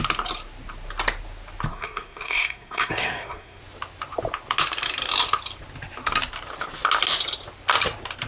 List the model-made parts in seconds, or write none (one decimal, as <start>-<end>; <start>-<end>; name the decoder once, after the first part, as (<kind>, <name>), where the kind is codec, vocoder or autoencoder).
1.7-3.6 (codec, SNAC)